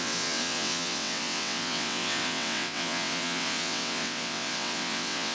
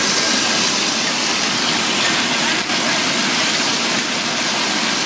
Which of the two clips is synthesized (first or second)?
first